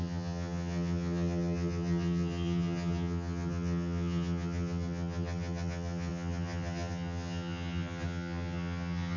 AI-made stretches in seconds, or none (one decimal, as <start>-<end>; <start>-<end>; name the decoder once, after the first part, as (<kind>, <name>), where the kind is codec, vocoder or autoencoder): 0.0-9.2 (vocoder, HiFi-GAN)